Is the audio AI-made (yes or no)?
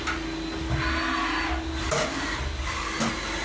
no